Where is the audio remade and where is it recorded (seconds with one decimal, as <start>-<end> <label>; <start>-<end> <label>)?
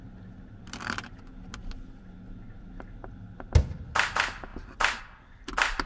0.0-4.5 recorded; 4.5-5.0 remade; 5.0-5.9 recorded